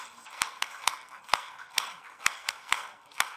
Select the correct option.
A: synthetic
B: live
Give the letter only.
A